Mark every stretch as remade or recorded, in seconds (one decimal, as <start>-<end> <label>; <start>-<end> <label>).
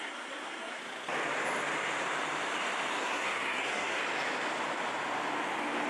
0.0-0.8 remade; 0.8-2.9 recorded; 2.9-4.0 remade; 4.0-5.9 recorded